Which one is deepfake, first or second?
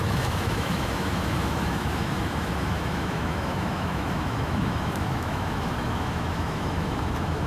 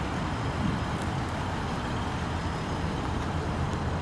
first